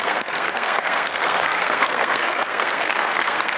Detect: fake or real fake